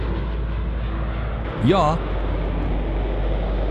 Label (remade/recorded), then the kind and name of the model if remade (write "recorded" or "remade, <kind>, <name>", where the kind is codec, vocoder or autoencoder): recorded